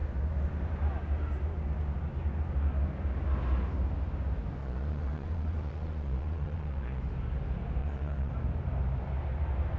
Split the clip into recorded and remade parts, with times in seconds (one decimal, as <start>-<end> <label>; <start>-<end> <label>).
0.0-4.6 recorded; 4.6-7.0 remade; 7.0-7.8 recorded; 7.8-8.3 remade; 8.3-9.8 recorded